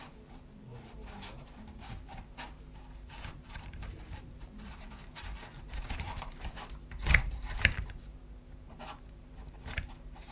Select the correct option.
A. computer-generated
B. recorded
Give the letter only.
A